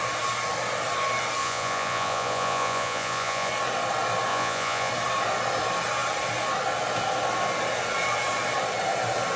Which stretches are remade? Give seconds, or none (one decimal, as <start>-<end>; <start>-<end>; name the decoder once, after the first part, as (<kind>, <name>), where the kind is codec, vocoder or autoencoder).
1.4-3.5 (vocoder, Vocos); 4.3-4.9